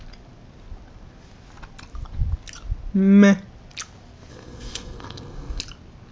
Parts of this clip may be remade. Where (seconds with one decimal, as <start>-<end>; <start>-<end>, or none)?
4.3-5.6